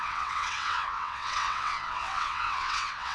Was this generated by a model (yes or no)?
yes